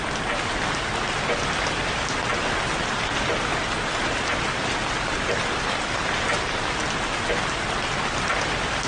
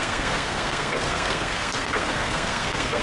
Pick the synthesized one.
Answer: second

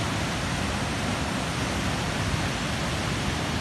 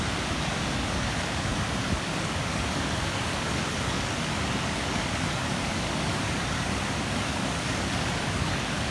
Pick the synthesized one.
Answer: second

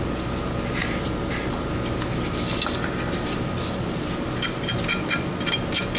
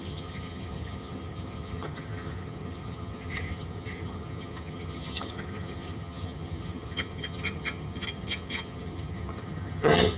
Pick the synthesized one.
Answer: second